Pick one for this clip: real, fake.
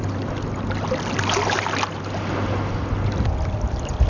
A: real